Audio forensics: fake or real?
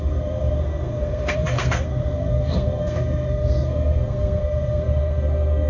fake